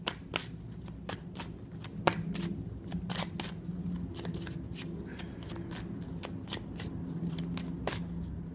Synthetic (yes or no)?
no